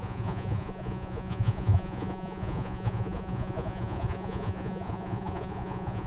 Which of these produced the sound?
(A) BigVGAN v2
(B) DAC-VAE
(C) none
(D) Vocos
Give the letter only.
D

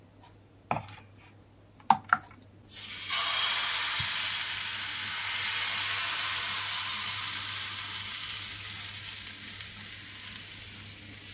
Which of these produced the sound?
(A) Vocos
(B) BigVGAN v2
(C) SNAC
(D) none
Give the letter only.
D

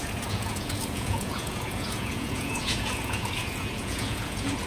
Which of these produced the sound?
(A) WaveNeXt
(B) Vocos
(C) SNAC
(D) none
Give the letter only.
B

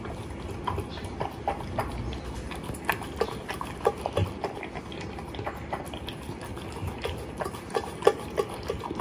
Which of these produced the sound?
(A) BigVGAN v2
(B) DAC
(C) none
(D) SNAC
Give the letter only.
C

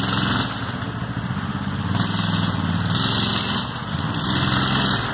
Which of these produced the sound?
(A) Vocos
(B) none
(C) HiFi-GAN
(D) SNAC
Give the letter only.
B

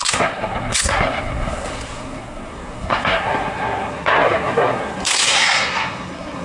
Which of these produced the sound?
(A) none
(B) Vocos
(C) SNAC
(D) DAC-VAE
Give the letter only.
C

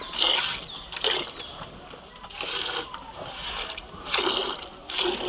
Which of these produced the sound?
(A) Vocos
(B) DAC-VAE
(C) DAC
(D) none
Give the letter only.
D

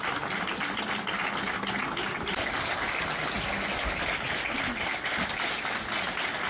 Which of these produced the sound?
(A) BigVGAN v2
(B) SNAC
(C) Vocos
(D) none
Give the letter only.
D